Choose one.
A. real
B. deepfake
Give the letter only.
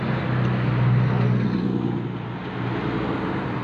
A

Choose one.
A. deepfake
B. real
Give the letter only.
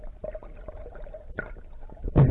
B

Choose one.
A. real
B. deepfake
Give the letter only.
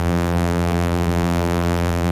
B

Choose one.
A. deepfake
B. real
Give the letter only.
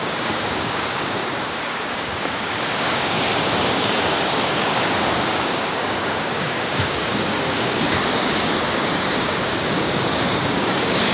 A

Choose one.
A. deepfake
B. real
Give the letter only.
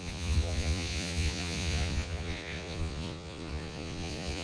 A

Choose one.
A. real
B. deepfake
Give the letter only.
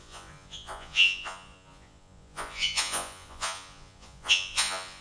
B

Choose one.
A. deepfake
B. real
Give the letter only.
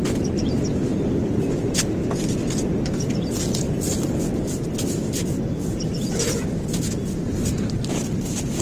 B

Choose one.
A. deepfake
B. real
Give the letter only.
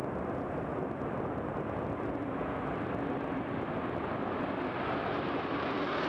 B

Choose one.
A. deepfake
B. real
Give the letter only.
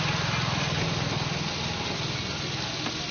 B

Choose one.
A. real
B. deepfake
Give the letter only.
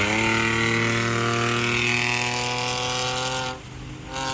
A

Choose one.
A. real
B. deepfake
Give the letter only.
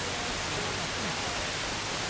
A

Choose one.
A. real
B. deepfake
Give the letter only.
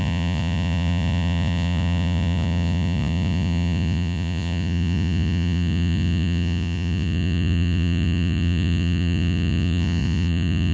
B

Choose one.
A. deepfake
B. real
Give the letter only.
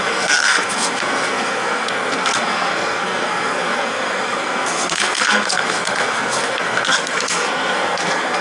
A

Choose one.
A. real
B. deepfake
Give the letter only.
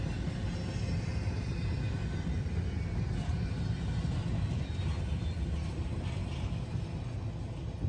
A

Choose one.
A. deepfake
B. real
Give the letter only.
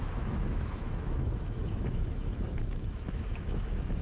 A